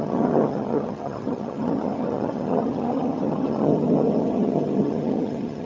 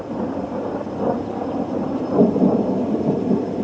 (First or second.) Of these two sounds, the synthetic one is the first